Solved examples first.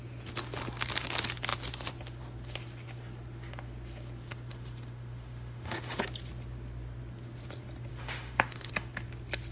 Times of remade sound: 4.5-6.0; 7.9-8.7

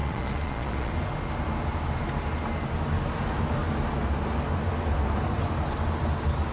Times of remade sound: 0.0-0.9

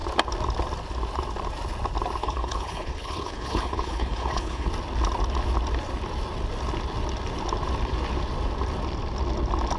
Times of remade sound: 2.2-4.7

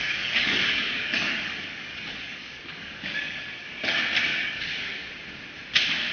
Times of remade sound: 0.0-3.7; 4.3-5.1